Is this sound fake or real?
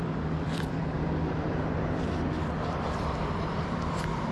fake